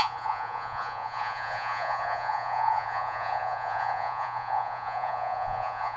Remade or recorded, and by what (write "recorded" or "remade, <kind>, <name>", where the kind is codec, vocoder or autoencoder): remade, vocoder, Vocos